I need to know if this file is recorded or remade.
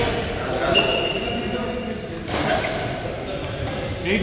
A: recorded